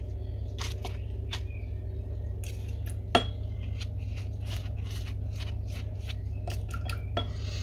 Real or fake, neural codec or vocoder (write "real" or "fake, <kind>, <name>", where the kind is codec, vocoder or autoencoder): real